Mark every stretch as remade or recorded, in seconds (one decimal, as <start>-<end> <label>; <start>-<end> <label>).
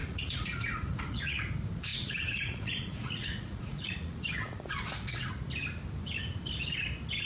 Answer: 0.0-1.4 remade; 1.4-1.9 recorded; 1.9-5.3 remade; 5.3-7.3 recorded